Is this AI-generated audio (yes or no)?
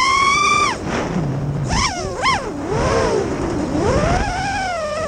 yes